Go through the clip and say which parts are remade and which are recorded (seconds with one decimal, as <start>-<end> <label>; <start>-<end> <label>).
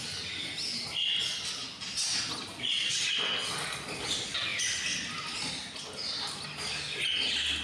0.0-7.6 recorded